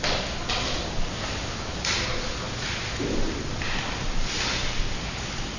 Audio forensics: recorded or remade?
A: recorded